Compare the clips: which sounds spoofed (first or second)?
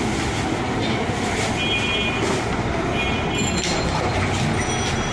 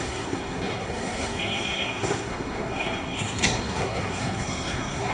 second